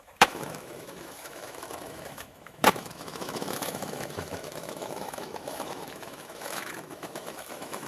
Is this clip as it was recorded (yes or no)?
no